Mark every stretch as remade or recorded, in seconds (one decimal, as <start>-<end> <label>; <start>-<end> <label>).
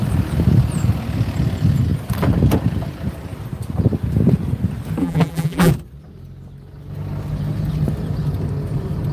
0.0-5.0 recorded; 5.0-5.7 remade; 5.7-9.1 recorded